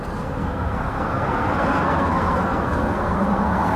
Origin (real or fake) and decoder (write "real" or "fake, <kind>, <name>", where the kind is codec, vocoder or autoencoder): fake, codec, SNAC